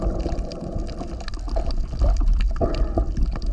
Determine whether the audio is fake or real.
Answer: real